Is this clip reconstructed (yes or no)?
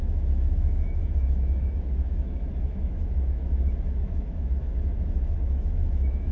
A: yes